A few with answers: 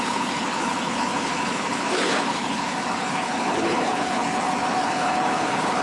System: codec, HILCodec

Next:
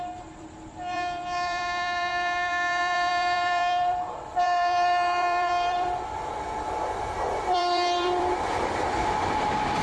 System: vocoder, BigVGAN v2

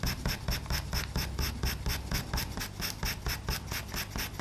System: none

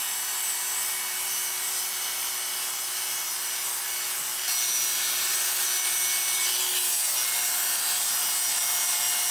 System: none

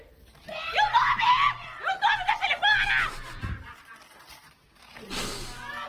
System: none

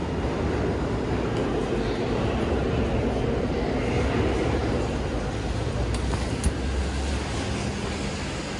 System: none